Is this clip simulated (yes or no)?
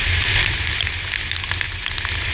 no